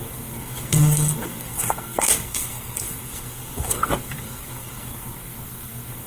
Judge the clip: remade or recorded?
remade